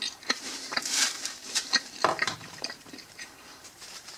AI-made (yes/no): yes